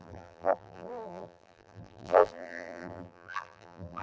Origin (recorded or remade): remade